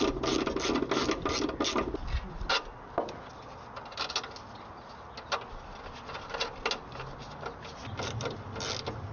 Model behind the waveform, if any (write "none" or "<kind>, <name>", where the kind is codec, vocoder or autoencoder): none